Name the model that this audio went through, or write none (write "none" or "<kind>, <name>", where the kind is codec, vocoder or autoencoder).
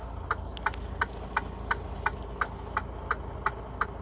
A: none